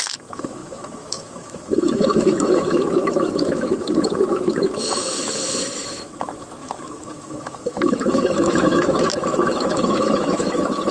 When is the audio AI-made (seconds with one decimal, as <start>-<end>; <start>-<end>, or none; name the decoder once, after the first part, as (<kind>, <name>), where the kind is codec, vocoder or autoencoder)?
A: 0.0-10.9 (autoencoder, DAC-VAE)